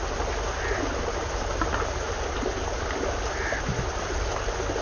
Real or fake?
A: real